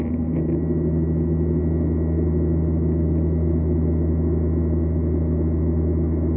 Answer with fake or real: real